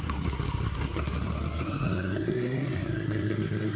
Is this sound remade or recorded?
remade